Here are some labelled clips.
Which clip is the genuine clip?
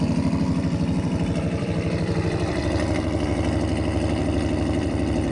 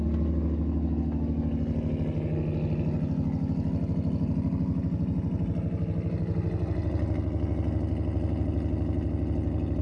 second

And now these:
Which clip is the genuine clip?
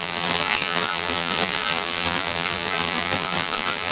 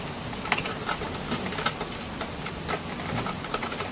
second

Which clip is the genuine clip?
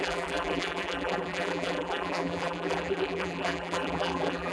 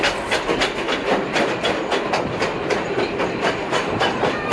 second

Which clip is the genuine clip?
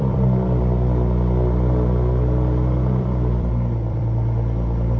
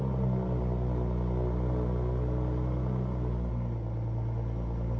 second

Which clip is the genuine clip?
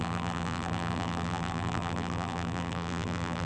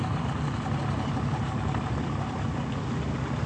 second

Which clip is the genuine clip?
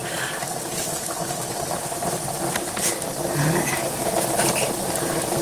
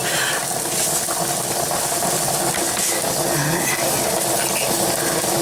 second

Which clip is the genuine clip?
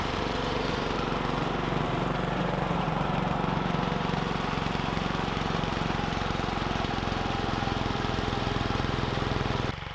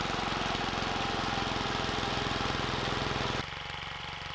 second